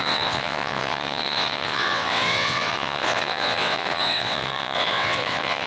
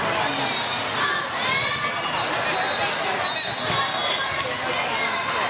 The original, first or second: second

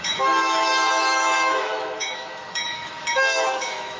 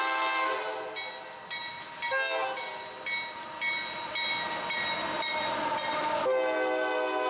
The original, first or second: second